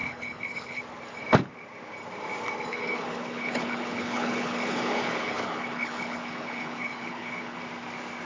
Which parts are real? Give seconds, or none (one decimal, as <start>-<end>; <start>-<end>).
0.8-2.7; 7.6-8.2